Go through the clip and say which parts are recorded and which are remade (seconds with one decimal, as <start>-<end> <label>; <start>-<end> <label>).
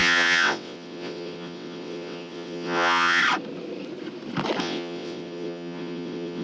0.0-3.2 remade; 3.2-4.6 recorded; 4.6-6.4 remade